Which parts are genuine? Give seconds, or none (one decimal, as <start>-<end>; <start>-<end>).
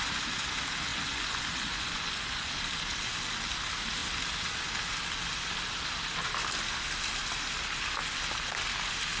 0.0-0.9; 2.5-9.2